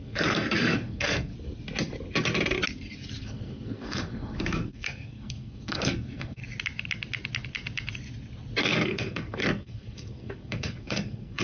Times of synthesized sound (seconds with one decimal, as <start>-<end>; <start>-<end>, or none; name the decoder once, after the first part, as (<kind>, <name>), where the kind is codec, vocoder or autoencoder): 0.0-1.3 (codec, SNAC); 3.2-6.4; 8.6-11.4